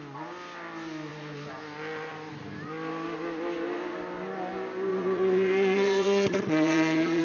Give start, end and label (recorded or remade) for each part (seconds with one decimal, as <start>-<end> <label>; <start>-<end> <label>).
0.0-4.9 recorded; 4.9-7.2 remade